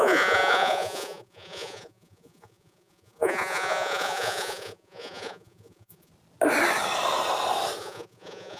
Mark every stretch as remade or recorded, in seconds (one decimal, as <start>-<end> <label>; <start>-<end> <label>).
0.0-6.1 remade; 6.1-7.8 recorded; 7.8-8.6 remade